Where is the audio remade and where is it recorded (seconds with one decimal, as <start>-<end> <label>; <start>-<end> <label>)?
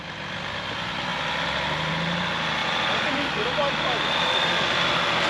0.0-5.3 recorded